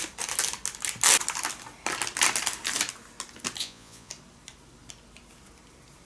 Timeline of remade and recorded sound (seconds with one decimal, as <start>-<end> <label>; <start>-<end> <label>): 0.0-3.6 recorded; 3.6-4.1 remade; 4.1-6.1 recorded